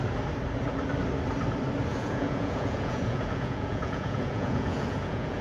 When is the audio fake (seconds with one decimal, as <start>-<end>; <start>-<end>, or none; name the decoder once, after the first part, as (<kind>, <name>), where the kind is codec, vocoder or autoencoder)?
1.9-5.4 (vocoder, Vocos)